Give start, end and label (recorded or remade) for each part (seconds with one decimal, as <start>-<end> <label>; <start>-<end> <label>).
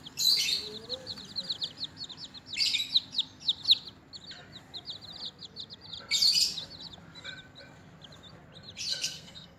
0.0-8.9 recorded; 8.9-9.6 remade